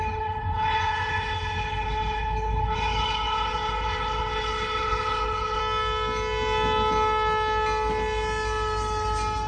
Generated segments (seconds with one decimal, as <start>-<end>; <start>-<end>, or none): 0.0-5.6